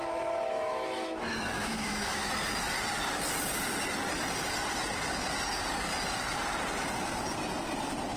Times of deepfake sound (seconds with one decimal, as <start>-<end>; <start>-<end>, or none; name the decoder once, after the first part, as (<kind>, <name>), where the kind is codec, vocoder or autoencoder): 0.0-2.3 (autoencoder, DAC-VAE)